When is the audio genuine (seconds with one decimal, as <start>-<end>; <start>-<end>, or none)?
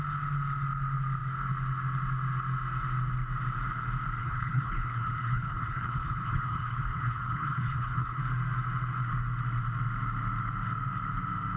0.0-4.2; 8.2-11.6